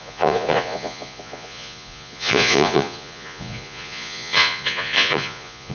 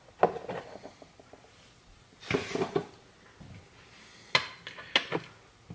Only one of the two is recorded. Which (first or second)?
second